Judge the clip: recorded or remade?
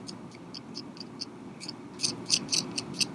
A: recorded